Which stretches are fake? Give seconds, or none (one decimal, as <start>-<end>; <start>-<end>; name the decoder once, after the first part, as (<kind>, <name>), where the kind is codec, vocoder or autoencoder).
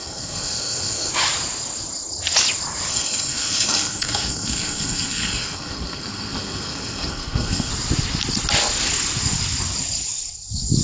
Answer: 0.0-1.1 (codec, SNAC); 2.9-7.7